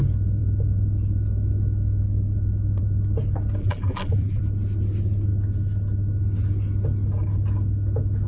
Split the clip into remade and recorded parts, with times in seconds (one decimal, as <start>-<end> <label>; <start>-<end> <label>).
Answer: 0.0-3.6 recorded; 3.6-4.4 remade; 4.4-8.3 recorded